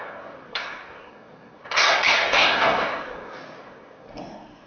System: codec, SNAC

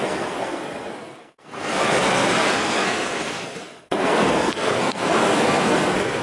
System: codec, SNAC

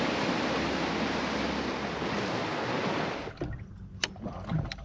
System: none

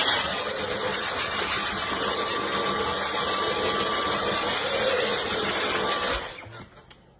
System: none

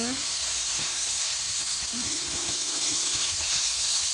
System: codec, SNAC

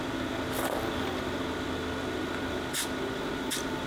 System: none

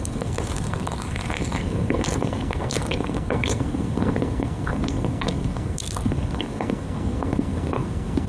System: codec, SNAC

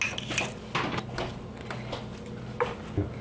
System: none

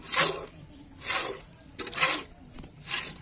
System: none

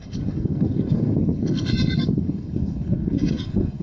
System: codec, SNAC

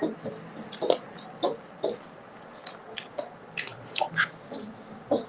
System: none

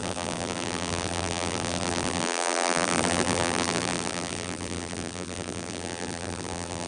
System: vocoder, BigVGAN v2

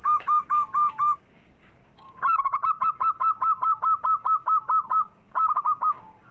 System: codec, DAC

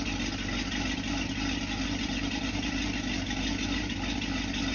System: none